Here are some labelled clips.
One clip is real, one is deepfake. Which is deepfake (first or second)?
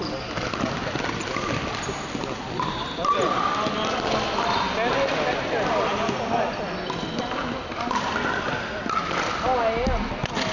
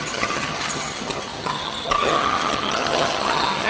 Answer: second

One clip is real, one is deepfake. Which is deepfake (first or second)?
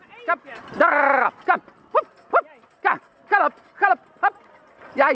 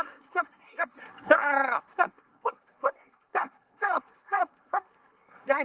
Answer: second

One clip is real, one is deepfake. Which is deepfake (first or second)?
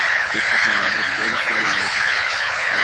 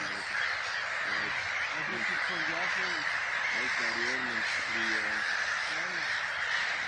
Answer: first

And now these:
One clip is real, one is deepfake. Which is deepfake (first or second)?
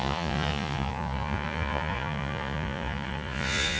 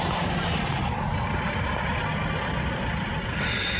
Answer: first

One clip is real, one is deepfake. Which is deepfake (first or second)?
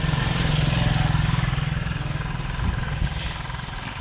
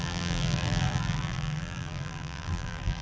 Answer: second